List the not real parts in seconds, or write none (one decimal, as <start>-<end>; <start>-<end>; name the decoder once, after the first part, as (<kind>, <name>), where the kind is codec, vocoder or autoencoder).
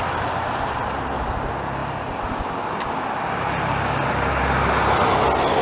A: none